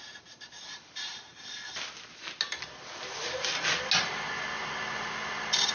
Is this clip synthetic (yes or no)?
no